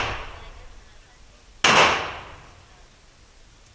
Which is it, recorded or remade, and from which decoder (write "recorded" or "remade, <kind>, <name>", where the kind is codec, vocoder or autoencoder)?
recorded